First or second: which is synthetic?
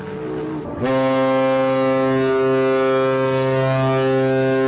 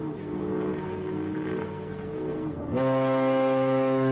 second